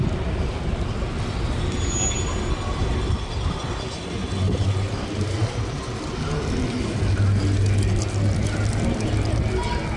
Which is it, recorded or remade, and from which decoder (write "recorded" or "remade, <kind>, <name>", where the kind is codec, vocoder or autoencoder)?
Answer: recorded